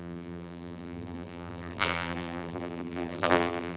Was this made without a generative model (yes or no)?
no